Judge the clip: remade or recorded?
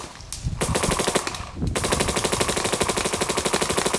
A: recorded